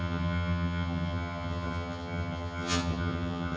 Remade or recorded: remade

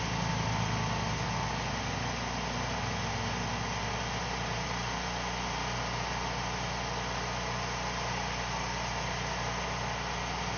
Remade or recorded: recorded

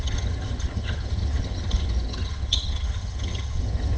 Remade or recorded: remade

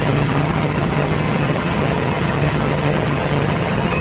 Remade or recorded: remade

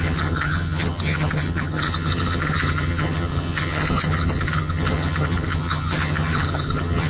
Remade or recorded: remade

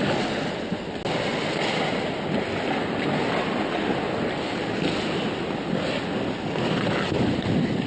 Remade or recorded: recorded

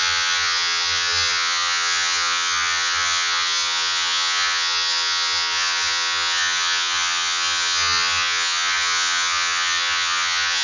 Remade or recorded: remade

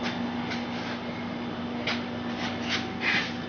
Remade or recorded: recorded